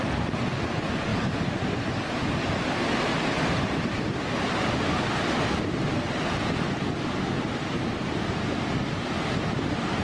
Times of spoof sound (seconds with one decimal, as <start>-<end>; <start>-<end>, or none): 1.1-4.0